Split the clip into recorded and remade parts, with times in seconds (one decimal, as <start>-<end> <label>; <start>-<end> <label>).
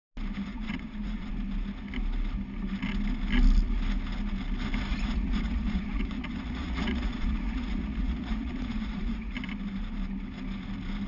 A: 0.0-0.5 recorded; 0.5-1.3 remade; 1.3-4.9 recorded; 4.9-9.3 remade; 9.3-11.1 recorded